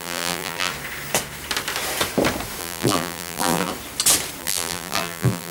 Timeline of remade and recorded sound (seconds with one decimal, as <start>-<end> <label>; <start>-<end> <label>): 0.0-0.7 remade; 0.7-2.6 recorded; 2.6-3.7 remade; 3.7-4.4 recorded; 4.4-5.5 remade